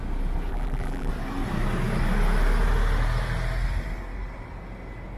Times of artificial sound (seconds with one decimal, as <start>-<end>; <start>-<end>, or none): 0.5-1.1